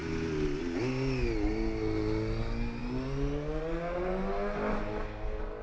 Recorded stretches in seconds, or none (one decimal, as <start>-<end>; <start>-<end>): 0.0-5.6